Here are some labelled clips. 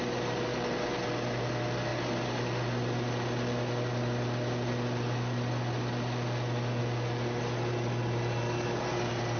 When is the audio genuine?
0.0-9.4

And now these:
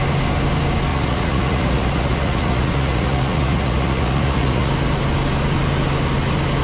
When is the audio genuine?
0.0-0.9; 4.7-6.6

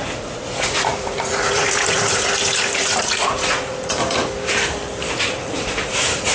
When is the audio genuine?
4.0-5.1

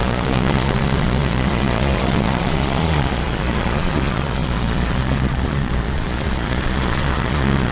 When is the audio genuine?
none

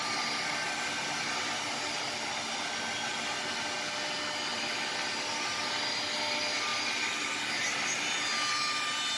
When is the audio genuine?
0.0-9.2